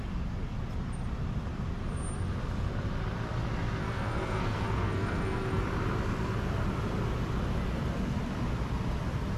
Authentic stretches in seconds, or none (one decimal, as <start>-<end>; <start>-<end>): 0.0-3.8; 5.6-9.4